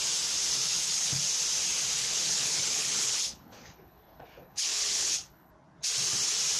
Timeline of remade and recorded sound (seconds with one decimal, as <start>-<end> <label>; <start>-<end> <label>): 0.0-0.6 recorded; 0.6-1.2 remade; 1.2-2.0 recorded; 2.0-5.5 remade; 5.5-6.6 recorded